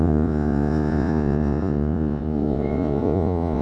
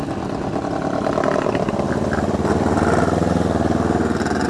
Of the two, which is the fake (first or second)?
first